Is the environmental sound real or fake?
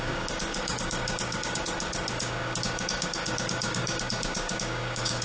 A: fake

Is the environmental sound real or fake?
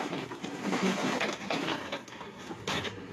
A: fake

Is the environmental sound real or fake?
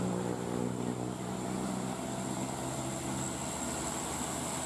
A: real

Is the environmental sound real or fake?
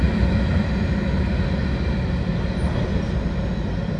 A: real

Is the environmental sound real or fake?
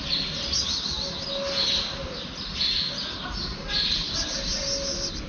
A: real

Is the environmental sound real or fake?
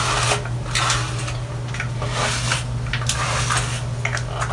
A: real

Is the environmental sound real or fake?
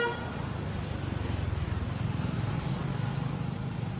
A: real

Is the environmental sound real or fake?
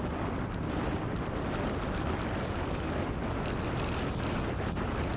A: real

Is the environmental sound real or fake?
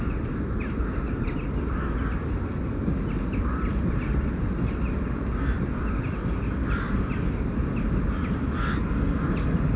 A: real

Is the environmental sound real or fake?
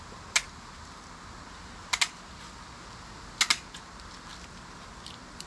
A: real